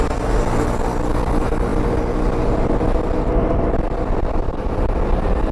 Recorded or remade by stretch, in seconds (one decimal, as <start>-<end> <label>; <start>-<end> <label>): 0.0-5.5 recorded